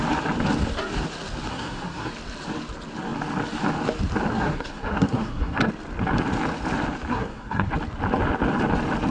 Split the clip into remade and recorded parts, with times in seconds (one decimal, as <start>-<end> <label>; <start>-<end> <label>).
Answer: 0.0-1.5 recorded; 1.5-2.1 remade; 2.1-4.3 recorded; 4.3-5.7 remade; 5.7-7.1 recorded; 7.1-7.7 remade; 7.7-9.1 recorded